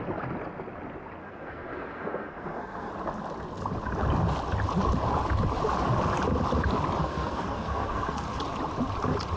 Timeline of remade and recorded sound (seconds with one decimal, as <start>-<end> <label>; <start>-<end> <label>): 0.0-1.2 recorded; 1.2-2.9 remade; 2.9-7.0 recorded; 7.0-8.4 remade; 8.4-9.4 recorded